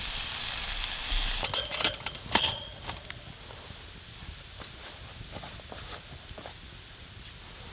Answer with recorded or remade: recorded